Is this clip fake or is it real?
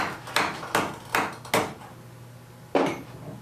real